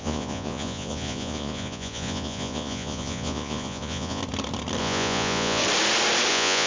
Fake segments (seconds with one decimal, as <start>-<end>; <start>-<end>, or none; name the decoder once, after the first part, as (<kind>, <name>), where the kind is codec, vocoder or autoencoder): 0.0-4.2 (vocoder, Vocos); 4.8-5.6; 6.3-6.7